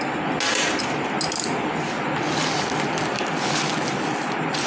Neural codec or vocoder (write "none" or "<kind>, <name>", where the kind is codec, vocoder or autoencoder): none